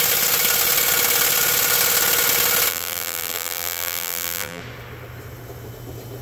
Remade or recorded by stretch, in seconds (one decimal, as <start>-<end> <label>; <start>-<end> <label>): 0.0-2.7 recorded; 2.7-4.6 remade; 4.6-6.2 recorded